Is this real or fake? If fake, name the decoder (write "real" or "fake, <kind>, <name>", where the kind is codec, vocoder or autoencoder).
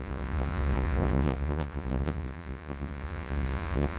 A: fake, vocoder, Vocos